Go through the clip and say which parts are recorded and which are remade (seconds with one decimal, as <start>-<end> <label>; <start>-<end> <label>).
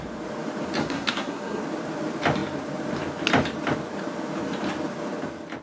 0.0-0.8 recorded; 0.8-1.6 remade; 1.6-5.6 recorded